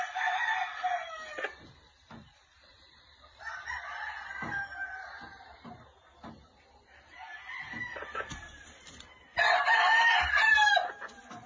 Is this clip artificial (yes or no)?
yes